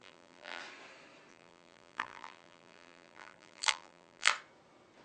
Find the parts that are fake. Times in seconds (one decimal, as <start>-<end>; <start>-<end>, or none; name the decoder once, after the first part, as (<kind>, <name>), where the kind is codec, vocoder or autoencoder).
0.0-0.6 (vocoder, BigVGAN v2); 1.3-4.3